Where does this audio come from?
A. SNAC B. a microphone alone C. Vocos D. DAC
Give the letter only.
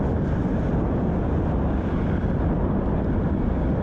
B